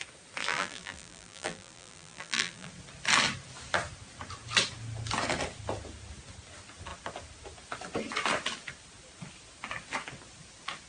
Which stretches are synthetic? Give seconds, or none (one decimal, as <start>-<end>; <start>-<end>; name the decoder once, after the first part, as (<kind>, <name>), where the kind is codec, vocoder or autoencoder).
0.4-2.7 (vocoder, BigVGAN v2)